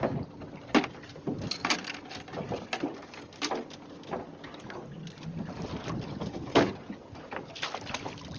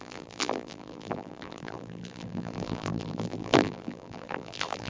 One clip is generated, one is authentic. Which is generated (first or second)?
second